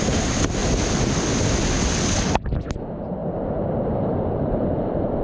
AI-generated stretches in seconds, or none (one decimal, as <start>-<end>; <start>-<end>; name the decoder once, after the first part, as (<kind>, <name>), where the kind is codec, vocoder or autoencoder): 0.0-0.6 (vocoder, BigVGAN v2); 2.8-5.2